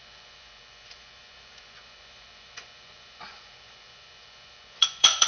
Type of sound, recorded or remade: remade